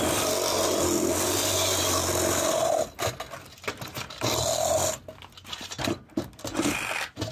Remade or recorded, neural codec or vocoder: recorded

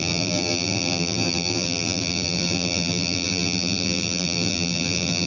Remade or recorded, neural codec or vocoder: remade, vocoder, BigVGAN v2